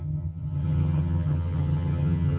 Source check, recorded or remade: remade